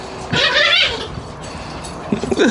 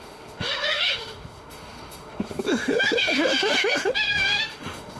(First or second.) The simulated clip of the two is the second